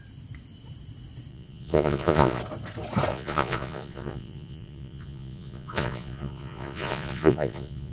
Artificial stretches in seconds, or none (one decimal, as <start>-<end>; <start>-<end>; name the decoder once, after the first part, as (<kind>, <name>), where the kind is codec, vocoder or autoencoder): 1.3-2.4 (vocoder, Vocos); 3.1-7.9